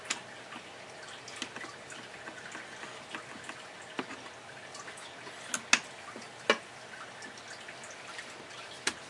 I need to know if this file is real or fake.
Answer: real